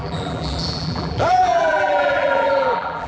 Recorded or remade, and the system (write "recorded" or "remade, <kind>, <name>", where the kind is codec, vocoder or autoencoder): remade, vocoder, BigVGAN v2